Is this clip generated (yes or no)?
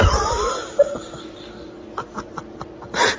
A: no